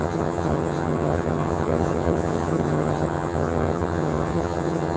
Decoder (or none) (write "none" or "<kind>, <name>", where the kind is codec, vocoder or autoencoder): vocoder, HiFi-GAN